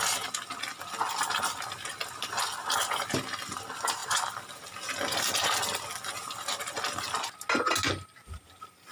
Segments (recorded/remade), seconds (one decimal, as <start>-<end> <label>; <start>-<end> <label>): 0.0-8.9 recorded